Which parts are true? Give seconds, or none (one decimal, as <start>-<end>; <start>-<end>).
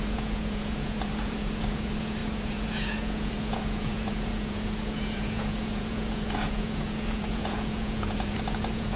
none